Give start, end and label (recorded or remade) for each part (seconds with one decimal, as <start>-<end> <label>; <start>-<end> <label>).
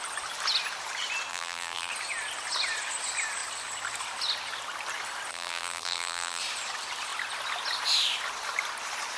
0.0-1.3 recorded; 1.3-1.9 remade; 1.9-5.3 recorded; 5.3-6.4 remade; 6.4-9.2 recorded